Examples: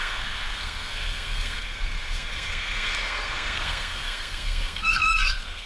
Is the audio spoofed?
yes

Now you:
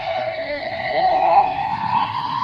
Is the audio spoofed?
yes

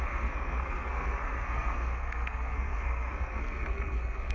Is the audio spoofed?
yes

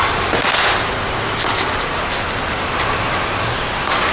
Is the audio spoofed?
no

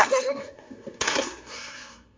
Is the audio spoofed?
yes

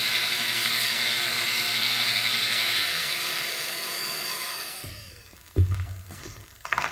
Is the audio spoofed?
yes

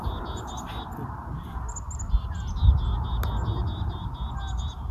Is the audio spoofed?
no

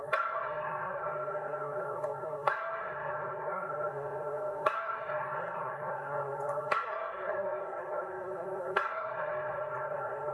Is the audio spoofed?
yes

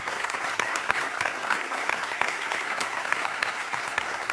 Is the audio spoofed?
yes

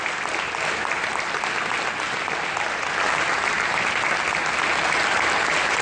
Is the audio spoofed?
no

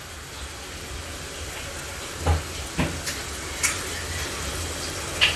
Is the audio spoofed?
no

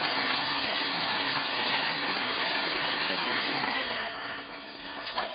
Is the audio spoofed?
yes